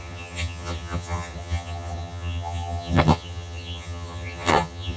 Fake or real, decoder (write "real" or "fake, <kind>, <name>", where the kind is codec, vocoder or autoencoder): fake, vocoder, HiFi-GAN